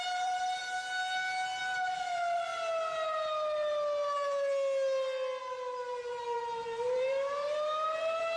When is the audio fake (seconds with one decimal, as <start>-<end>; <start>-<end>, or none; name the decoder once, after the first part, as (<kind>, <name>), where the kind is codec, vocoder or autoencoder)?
0.0-0.6 (vocoder, BigVGAN v2); 1.6-2.5; 5.4-8.4